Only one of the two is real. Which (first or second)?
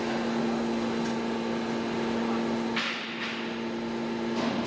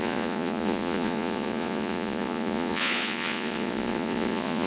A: first